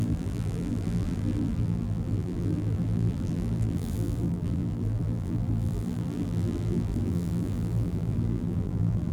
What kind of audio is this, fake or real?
fake